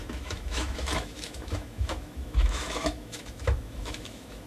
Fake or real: fake